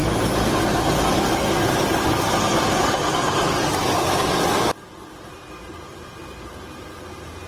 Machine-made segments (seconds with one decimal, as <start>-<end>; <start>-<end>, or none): 2.1-7.5